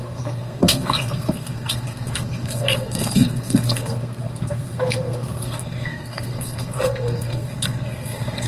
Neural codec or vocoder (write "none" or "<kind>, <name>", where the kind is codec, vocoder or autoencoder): codec, SNAC